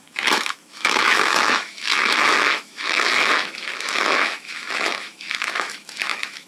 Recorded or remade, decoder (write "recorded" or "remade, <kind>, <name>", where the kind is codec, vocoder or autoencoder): remade, autoencoder, DAC-VAE